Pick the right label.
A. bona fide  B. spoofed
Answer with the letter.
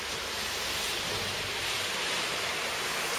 B